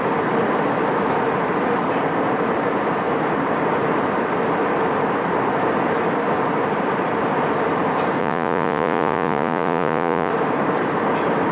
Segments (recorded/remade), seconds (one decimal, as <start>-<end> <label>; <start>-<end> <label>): 0.0-8.2 recorded; 8.2-10.3 remade; 10.3-11.5 recorded